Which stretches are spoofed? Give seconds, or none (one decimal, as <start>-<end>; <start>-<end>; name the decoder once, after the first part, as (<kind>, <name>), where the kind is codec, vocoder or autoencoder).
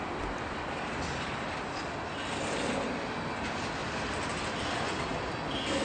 3.8-4.6 (vocoder, BigVGAN v2)